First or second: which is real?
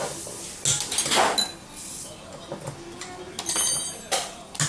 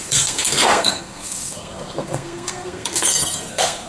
first